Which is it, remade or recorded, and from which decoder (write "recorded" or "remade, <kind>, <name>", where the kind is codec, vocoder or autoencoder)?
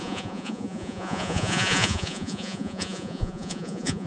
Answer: remade, vocoder, Vocos